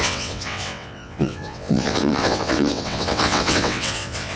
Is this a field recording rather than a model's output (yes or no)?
no